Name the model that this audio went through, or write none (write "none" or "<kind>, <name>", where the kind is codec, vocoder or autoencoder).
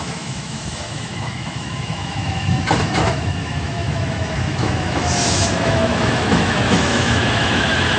autoencoder, DAC-VAE